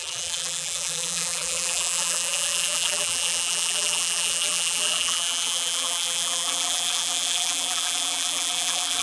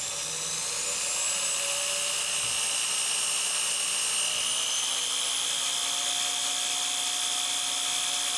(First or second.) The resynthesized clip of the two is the first